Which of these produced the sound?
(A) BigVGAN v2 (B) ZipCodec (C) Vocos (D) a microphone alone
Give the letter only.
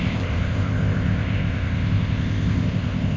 B